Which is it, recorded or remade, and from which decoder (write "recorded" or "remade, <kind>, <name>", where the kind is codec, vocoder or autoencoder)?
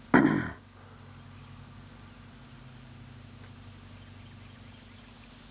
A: recorded